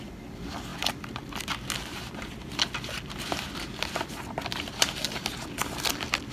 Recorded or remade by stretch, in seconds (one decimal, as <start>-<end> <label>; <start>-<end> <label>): 0.0-6.3 recorded